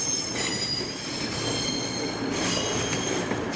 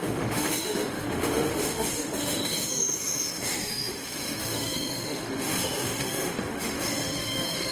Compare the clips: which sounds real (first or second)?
first